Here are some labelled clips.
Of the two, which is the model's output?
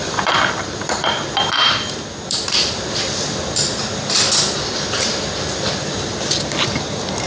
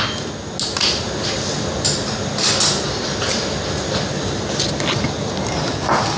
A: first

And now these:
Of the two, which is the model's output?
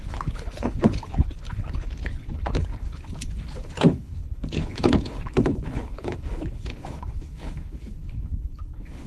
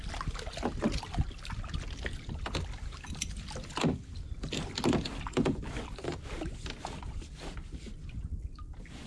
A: first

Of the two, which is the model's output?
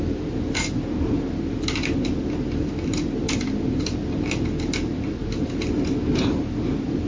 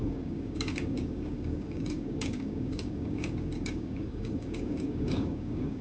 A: second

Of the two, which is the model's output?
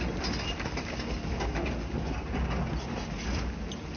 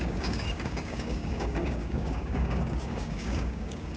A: second